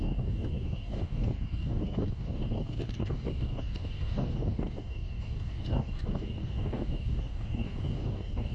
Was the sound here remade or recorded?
remade